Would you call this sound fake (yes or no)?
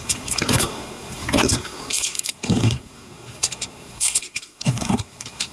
yes